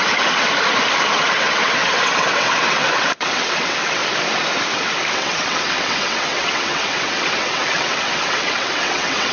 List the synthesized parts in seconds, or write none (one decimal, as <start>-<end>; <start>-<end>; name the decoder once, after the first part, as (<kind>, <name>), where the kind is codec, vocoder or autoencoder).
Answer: 0.0-0.5 (vocoder, WaveNeXt); 1.0-4.0; 5.1-9.3